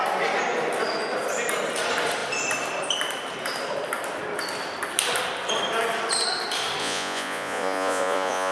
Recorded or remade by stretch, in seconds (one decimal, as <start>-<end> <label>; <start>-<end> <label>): 0.0-6.8 recorded; 6.8-8.5 remade